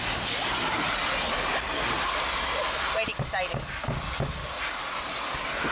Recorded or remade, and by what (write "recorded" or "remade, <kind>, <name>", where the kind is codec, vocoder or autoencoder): recorded